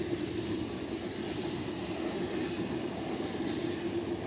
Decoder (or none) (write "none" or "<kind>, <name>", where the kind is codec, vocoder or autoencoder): none